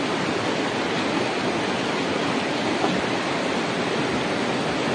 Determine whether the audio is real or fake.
real